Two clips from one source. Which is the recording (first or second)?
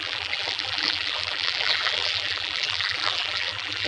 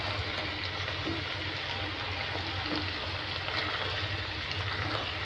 second